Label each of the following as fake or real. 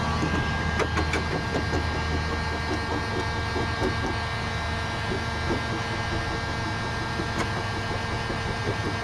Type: real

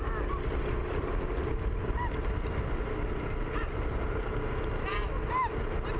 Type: real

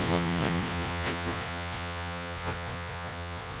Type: fake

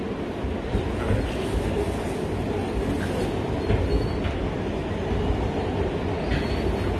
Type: real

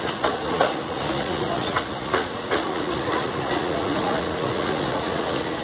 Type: fake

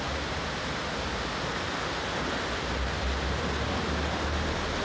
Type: real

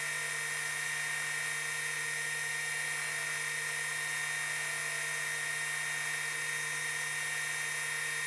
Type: real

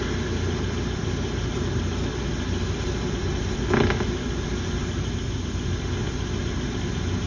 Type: real